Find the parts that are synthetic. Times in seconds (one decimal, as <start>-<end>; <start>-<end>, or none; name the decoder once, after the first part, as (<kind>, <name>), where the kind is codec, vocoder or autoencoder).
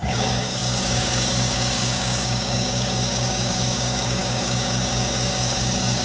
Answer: 0.0-6.0 (codec, DAC)